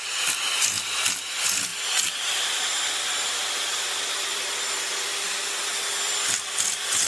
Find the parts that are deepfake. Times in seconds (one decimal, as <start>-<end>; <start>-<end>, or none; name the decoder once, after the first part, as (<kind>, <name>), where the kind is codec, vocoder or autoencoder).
1.7-5.5 (vocoder, BigVGAN v2)